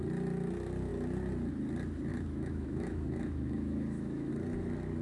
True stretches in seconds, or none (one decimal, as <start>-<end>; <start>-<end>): 0.0-2.1; 4.3-5.0